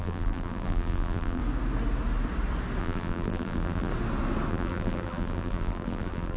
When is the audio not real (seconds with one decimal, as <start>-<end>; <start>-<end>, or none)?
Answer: 0.0-1.4; 2.8-3.9; 4.5-6.4